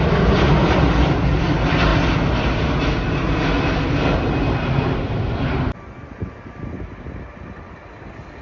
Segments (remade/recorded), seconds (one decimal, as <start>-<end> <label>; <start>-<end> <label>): 0.0-8.4 recorded